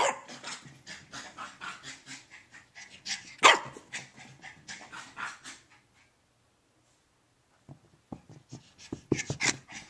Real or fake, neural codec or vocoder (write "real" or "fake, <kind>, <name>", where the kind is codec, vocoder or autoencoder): real